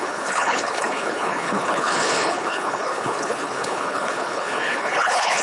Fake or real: fake